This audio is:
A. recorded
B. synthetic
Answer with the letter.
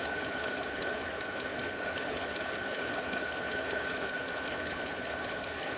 B